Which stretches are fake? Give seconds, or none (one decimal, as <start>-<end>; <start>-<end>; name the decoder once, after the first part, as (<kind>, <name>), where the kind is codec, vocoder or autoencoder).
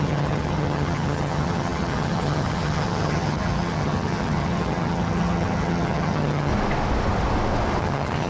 0.0-6.5 (vocoder, HiFi-GAN); 7.8-8.3